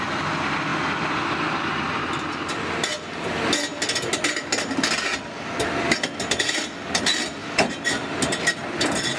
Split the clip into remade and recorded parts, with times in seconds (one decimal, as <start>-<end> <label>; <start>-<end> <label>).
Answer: 0.0-7.4 recorded; 7.4-8.0 remade; 8.0-9.2 recorded